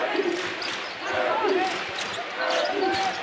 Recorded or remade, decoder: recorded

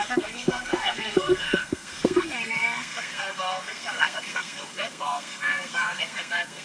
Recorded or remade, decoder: remade, codec, SNAC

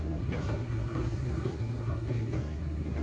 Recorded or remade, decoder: remade, codec, SNAC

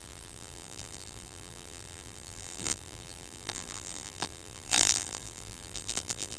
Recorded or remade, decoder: remade, vocoder, BigVGAN v2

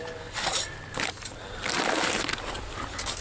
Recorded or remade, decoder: recorded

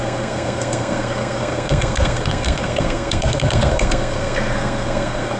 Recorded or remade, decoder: remade, codec, SNAC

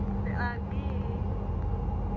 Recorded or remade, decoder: recorded